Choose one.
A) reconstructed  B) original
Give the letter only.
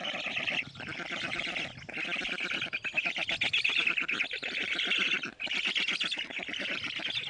B